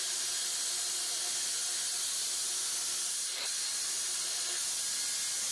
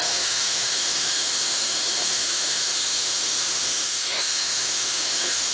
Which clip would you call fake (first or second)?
second